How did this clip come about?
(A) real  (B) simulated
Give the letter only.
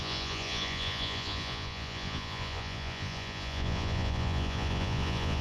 B